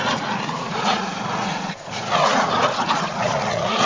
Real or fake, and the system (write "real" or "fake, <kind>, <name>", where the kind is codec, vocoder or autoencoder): fake, vocoder, Vocos